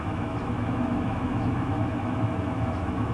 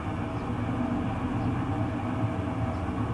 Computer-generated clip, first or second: first